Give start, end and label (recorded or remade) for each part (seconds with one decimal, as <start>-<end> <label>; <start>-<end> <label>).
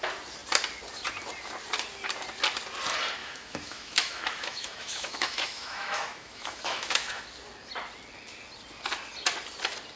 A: 0.0-3.2 recorded; 3.2-7.2 remade; 7.2-10.0 recorded